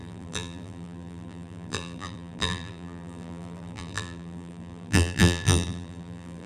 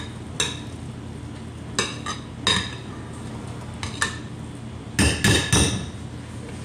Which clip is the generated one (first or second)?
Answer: first